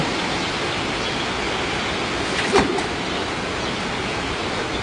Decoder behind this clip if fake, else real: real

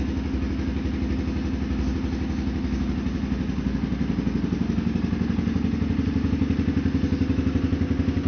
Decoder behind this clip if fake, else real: real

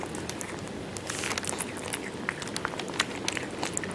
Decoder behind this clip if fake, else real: real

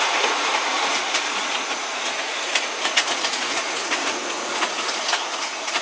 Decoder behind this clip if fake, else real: fake, vocoder, Vocos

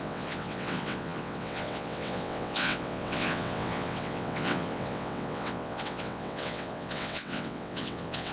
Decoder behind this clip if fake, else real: fake, vocoder, WaveNeXt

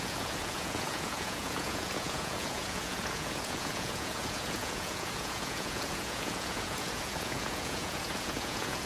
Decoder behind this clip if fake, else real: fake, vocoder, Vocos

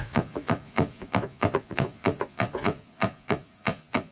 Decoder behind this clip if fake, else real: fake, vocoder, Vocos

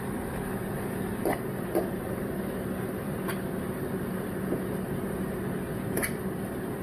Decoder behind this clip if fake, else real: real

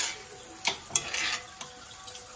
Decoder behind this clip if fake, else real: real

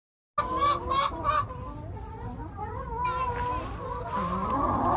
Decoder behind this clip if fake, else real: real